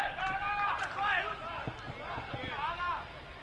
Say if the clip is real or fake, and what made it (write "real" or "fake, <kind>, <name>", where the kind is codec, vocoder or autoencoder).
real